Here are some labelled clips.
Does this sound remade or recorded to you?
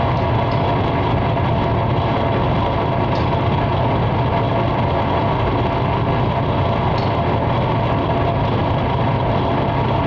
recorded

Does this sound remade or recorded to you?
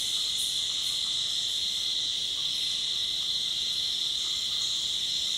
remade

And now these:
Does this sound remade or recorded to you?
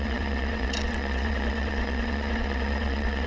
remade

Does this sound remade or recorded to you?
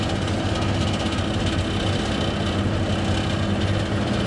recorded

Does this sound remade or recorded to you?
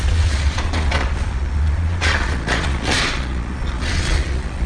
remade